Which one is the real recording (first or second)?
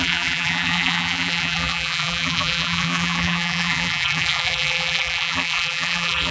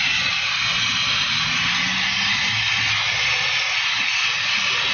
second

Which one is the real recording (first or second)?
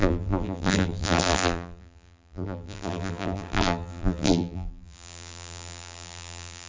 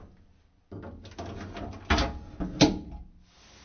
second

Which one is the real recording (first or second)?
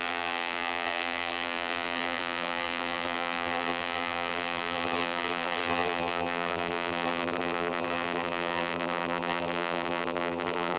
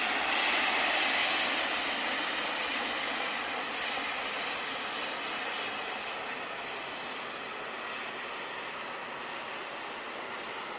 second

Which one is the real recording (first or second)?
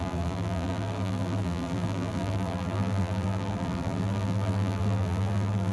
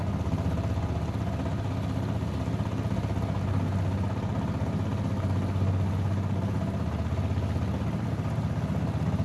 second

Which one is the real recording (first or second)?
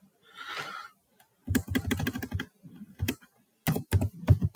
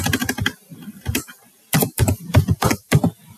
first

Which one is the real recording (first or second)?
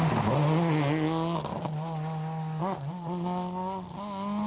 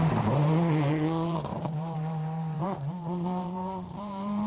first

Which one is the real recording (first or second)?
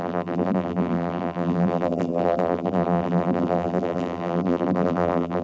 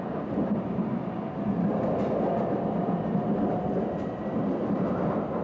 second